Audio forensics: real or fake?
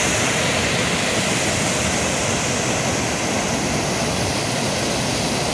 real